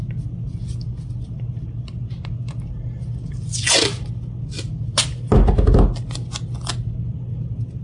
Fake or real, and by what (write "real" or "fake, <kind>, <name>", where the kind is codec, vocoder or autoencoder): real